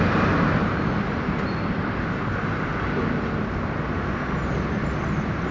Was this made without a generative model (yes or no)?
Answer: yes